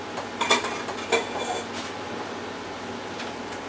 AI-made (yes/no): no